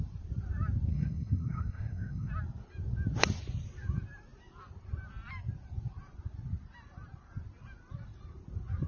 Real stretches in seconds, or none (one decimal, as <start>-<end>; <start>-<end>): 0.0-0.9; 2.3-8.9